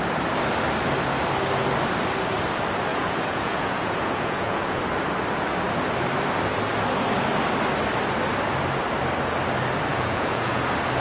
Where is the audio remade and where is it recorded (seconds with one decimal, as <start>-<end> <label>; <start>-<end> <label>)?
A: 0.0-2.9 recorded; 2.9-4.8 remade; 4.8-9.9 recorded; 9.9-10.6 remade; 10.6-11.0 recorded